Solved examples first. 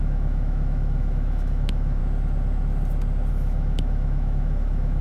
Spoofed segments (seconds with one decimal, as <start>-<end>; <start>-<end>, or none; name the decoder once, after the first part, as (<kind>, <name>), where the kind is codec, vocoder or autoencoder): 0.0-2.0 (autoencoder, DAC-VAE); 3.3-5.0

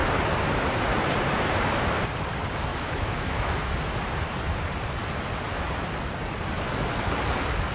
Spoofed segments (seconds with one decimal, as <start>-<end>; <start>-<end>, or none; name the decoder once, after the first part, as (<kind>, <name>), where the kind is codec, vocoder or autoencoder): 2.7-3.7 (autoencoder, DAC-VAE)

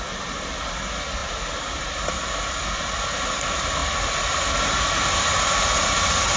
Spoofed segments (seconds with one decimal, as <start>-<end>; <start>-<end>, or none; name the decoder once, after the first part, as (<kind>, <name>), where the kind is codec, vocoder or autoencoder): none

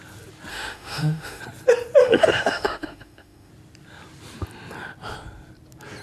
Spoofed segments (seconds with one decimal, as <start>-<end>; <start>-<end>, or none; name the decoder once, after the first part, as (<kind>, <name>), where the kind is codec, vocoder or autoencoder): 0.5-1.4 (autoencoder, DAC-VAE); 2.0-3.5

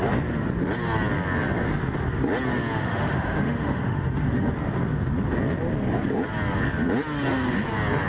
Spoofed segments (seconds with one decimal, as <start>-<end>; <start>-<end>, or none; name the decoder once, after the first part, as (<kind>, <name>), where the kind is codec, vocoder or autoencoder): 2.8-4.5 (autoencoder, DAC-VAE)

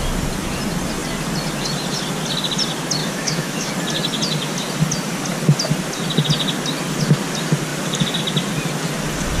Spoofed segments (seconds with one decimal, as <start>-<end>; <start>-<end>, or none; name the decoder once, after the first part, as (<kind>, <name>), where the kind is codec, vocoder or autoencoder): 3.0-3.7 (autoencoder, DAC-VAE)

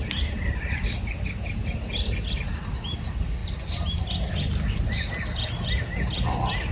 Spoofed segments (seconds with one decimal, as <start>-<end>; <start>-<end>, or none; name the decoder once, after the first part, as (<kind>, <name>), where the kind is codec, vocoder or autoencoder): none

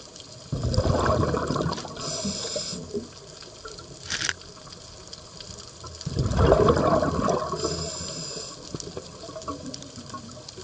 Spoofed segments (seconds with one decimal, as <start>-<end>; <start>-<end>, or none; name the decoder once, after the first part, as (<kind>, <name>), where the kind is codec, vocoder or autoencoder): none